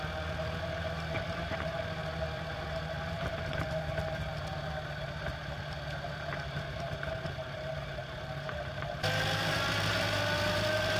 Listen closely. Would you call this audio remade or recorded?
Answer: remade